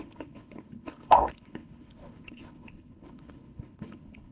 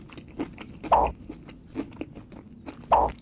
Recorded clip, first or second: second